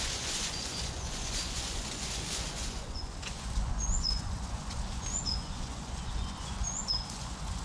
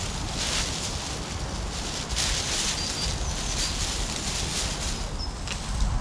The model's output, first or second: first